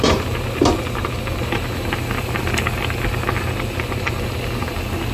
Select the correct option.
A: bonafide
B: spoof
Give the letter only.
A